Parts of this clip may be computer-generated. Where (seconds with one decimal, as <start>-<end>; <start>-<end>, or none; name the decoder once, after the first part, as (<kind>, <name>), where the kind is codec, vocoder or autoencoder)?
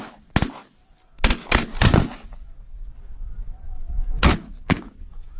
none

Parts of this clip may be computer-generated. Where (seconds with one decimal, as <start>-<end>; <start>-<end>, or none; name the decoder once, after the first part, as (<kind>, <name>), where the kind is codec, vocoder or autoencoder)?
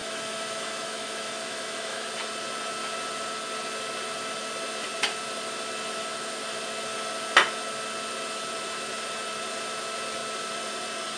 0.0-2.1 (autoencoder, DAC-VAE)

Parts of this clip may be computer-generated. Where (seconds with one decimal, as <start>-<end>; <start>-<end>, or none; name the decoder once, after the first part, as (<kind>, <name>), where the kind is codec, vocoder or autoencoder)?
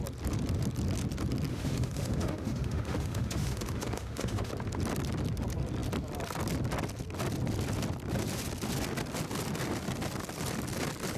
1.5-4.5 (autoencoder, DAC-VAE)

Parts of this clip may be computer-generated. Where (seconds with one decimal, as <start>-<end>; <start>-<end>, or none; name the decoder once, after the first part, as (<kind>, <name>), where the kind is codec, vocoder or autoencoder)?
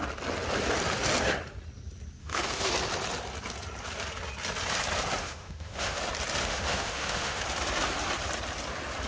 2.2-2.7 (autoencoder, DAC-VAE); 5.2-6.0; 6.4-7.4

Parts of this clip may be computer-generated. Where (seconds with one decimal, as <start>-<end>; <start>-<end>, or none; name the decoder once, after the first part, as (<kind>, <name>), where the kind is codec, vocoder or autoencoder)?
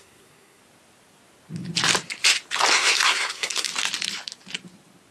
0.0-0.6 (codec, SNAC); 2.7-3.7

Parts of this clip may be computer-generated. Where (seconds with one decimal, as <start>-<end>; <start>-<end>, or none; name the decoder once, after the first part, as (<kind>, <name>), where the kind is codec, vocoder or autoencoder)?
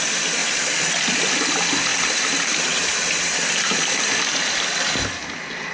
0.4-1.0 (vocoder, BigVGAN v2); 1.9-3.8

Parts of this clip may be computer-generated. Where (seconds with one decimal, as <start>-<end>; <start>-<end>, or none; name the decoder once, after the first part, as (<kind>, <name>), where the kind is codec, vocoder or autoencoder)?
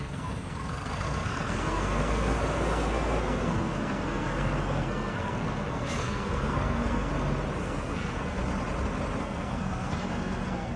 0.0-7.1 (codec, SNAC); 7.6-8.4; 9.2-10.8